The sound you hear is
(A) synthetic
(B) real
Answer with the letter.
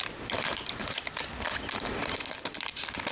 A